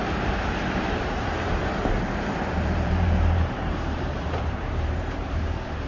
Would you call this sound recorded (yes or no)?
no